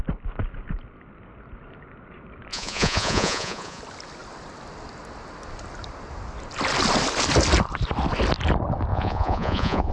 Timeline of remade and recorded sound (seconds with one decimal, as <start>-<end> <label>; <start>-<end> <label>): 0.0-2.5 recorded; 2.5-3.8 remade; 3.8-8.9 recorded; 8.9-9.9 remade